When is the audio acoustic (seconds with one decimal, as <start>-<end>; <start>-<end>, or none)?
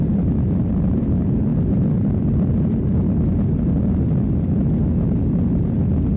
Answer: 1.5-5.2